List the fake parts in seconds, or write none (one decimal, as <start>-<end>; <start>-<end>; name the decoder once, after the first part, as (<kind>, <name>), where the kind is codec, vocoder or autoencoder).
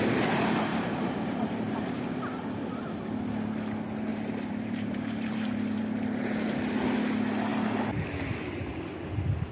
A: 0.7-2.0 (vocoder, BigVGAN v2); 4.1-5.8